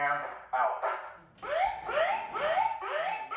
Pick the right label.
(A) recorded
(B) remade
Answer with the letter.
A